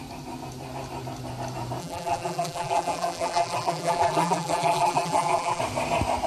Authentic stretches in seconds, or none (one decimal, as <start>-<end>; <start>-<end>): 0.0-1.8; 5.6-6.3